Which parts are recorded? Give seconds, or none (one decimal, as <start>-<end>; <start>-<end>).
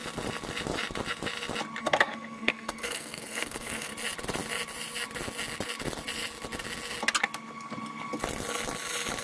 0.0-1.8; 3.9-9.2